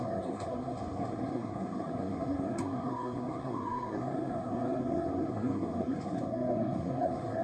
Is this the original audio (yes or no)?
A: no